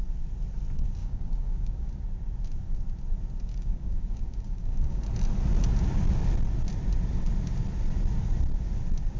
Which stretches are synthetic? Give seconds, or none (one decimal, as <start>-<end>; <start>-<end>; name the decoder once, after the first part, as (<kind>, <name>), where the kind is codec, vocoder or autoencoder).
1.0-1.9 (codec, DAC); 3.5-5.0